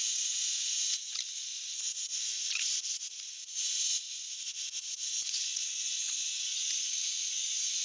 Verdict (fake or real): fake